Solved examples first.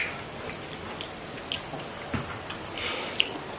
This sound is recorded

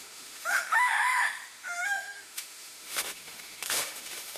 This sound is remade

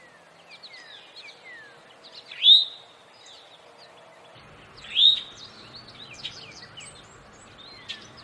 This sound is recorded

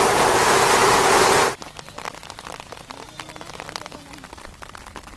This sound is recorded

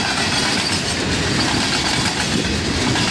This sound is recorded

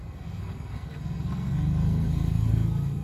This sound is remade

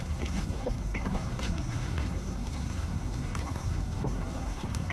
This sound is remade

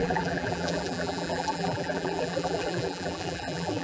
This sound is remade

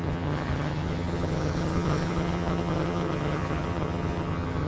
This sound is remade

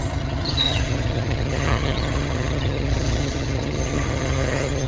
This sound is remade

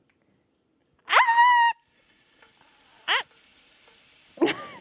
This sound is recorded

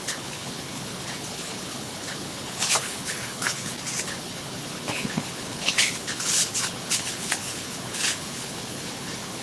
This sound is remade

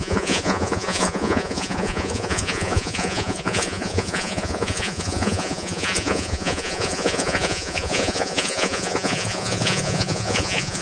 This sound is remade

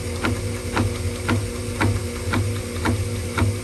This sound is recorded